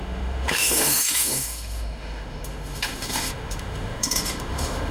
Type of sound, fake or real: fake